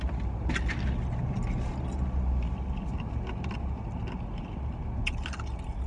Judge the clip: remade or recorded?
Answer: recorded